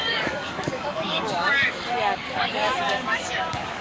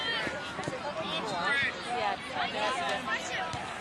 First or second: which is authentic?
second